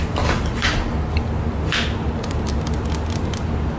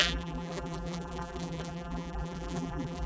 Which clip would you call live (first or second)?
first